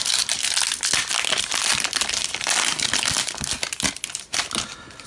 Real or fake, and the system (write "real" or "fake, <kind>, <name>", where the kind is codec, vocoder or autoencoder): real